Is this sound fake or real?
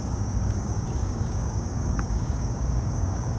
fake